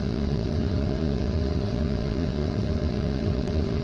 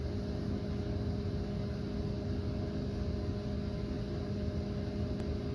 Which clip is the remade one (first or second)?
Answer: first